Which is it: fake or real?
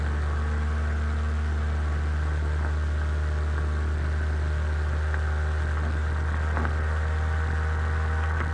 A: real